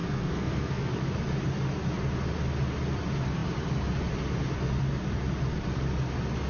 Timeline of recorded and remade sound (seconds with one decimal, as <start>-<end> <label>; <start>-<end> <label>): 0.0-0.9 remade; 0.9-6.5 recorded